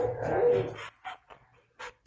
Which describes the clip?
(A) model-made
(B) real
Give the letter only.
B